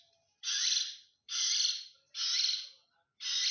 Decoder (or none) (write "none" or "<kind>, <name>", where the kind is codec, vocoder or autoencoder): none